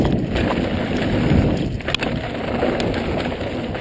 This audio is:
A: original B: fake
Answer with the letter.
A